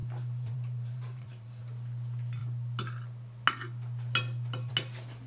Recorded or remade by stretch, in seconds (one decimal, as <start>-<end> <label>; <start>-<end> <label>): 0.0-1.6 remade; 1.6-5.3 recorded